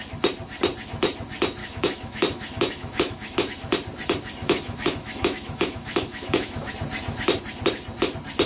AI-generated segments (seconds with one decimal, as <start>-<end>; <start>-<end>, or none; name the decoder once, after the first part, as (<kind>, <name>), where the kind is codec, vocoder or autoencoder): 1.6-3.7 (autoencoder, DAC-VAE); 4.4-6.7